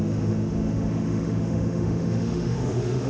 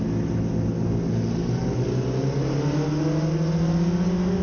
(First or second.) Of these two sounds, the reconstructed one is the first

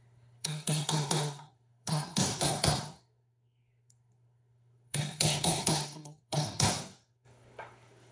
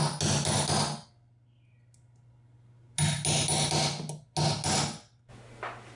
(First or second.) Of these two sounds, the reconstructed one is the first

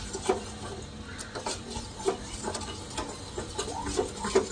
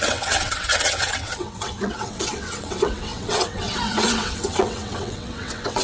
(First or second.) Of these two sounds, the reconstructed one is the second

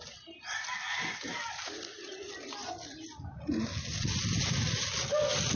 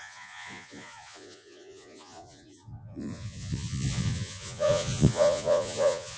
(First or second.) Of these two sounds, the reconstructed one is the second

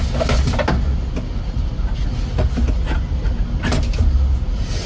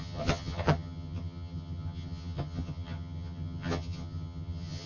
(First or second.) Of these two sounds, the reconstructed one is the second